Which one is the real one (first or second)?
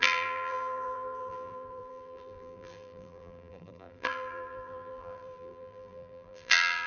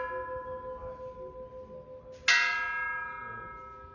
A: second